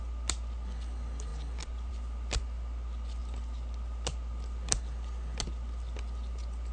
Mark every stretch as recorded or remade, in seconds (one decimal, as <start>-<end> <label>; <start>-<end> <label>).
0.0-6.7 recorded